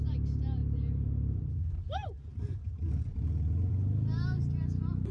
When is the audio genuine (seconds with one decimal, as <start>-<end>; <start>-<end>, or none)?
0.0-5.1